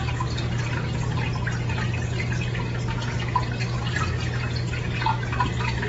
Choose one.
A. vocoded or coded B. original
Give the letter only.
B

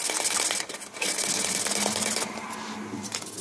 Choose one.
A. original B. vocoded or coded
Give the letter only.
A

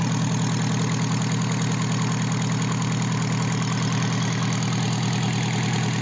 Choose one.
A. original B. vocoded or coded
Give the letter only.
A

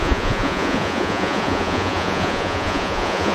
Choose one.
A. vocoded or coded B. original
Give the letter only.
A